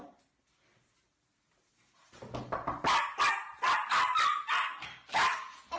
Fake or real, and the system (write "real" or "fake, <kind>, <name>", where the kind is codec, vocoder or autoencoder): real